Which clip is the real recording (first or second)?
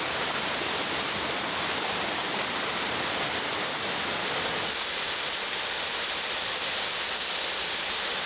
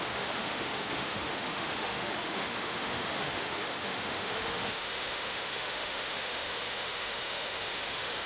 first